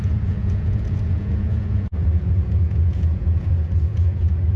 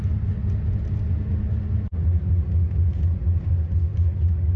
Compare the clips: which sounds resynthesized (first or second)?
first